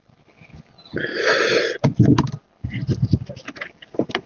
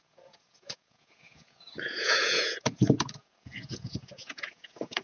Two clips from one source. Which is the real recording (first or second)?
first